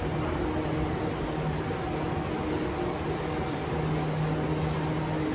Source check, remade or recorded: recorded